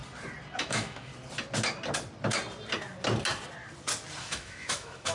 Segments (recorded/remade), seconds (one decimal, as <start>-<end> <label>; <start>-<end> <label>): 0.0-0.6 recorded; 0.6-1.1 remade; 1.1-4.2 recorded; 4.2-5.1 remade